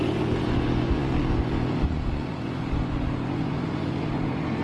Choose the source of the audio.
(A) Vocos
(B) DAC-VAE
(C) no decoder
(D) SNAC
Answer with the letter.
A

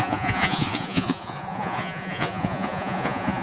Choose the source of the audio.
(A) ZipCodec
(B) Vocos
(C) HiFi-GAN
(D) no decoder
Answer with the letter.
B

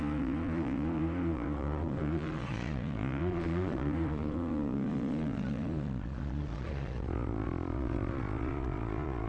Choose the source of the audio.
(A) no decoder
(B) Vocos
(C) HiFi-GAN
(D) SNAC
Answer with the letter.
B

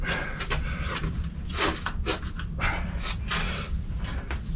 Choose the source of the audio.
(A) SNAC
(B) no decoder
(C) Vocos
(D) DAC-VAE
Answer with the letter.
B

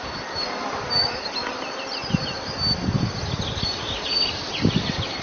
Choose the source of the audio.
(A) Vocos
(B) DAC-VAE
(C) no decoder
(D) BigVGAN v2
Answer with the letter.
C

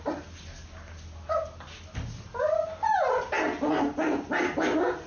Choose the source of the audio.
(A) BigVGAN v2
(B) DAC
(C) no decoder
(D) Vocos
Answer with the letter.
C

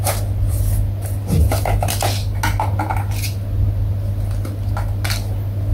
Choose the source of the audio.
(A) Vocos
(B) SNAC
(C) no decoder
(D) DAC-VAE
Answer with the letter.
C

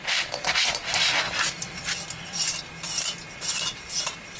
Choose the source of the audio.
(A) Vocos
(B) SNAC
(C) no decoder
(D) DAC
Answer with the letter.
C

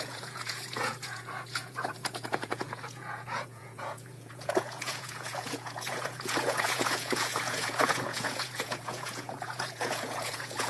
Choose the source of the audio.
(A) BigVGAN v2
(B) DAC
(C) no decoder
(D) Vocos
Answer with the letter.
D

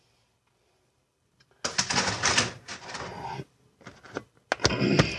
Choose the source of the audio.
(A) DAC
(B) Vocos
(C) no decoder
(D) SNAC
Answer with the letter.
C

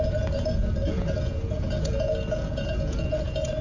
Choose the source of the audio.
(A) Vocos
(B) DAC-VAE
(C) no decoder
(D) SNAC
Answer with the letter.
A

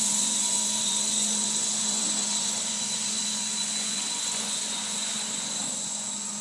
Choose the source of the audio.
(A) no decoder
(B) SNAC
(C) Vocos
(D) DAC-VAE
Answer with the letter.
C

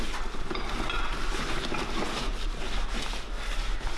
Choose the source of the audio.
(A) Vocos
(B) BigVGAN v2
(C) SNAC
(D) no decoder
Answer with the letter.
D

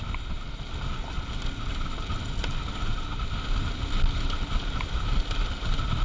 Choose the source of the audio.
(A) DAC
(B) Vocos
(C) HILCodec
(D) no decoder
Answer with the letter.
D